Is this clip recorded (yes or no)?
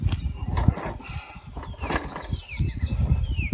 yes